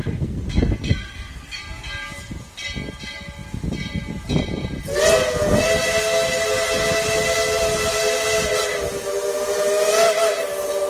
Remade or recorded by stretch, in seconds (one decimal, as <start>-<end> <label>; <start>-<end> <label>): 0.0-1.6 remade; 1.6-10.9 recorded